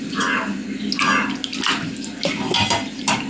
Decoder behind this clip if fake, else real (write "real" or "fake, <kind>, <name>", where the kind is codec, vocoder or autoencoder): real